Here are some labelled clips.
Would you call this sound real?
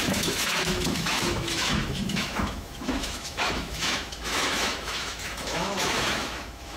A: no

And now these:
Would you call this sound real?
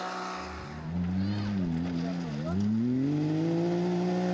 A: yes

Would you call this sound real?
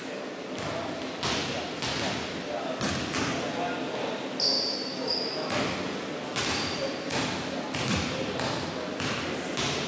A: yes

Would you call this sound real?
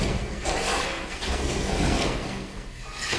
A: no